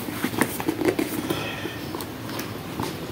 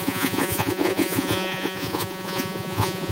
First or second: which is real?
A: first